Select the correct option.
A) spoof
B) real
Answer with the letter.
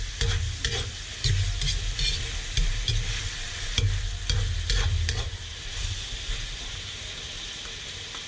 B